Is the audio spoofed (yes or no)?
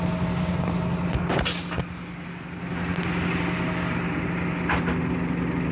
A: no